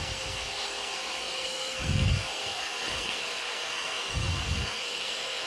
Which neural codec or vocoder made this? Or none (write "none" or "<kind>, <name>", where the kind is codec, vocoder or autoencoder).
codec, SNAC